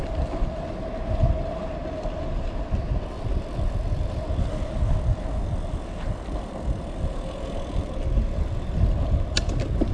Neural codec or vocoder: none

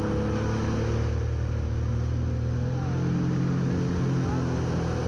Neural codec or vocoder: none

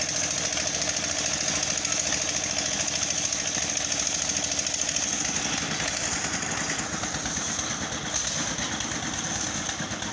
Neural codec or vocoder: none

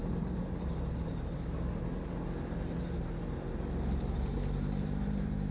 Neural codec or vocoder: vocoder, BigVGAN v2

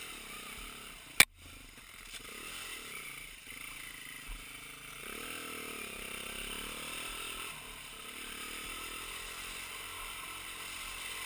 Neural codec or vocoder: none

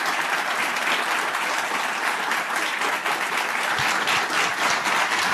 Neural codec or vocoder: none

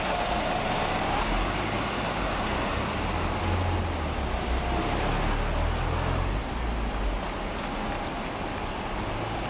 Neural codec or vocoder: none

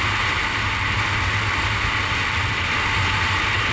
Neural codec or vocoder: none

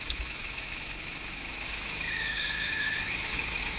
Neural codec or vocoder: autoencoder, DAC-VAE